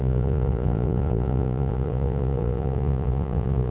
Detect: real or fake fake